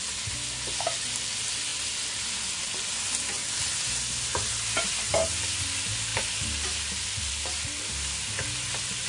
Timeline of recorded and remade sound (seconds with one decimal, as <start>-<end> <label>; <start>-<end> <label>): 0.0-9.1 recorded